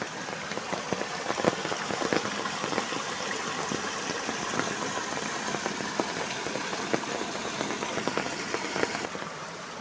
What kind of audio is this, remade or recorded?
recorded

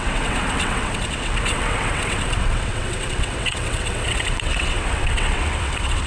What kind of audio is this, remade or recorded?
remade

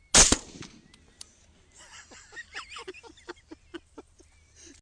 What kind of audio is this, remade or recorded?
recorded